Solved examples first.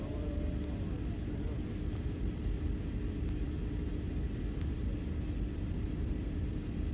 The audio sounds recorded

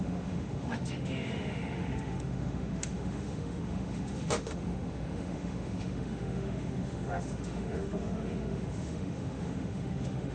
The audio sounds remade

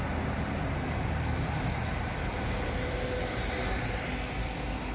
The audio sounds recorded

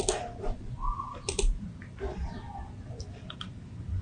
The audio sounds recorded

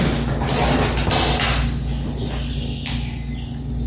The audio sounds recorded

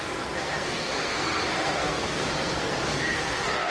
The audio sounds remade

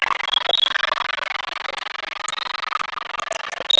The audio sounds recorded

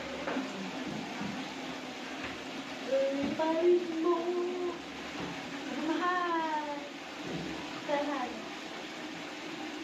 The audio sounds recorded